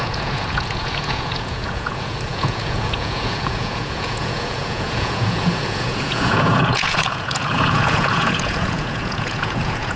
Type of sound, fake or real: fake